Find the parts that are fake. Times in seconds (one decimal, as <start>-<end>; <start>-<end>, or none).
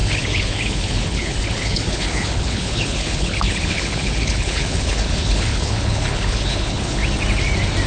0.0-7.0